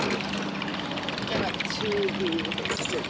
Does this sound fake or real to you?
real